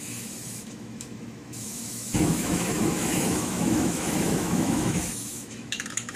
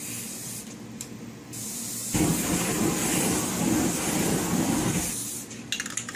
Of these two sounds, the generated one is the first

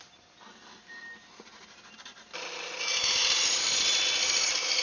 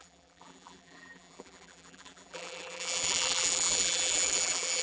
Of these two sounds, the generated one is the second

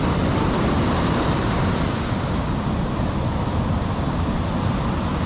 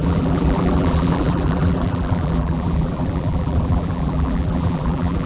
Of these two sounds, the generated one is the second